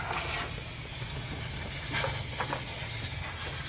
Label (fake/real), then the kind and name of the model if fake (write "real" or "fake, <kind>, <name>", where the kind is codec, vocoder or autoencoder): real